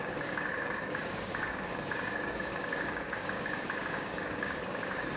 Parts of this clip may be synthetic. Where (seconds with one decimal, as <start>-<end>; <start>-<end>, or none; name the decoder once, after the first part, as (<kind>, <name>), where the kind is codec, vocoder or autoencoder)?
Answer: 0.0-5.2 (codec, DAC)